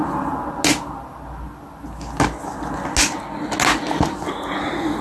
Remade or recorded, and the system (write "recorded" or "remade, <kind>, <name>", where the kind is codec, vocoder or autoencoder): recorded